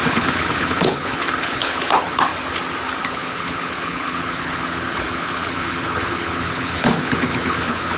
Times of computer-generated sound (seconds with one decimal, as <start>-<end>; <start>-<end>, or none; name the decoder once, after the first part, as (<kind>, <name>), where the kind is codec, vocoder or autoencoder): 0.0-2.3 (codec, HILCodec); 3.0-8.0